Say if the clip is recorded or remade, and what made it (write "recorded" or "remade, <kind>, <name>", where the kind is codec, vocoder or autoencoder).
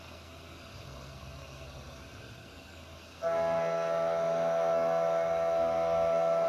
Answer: remade, codec, SNAC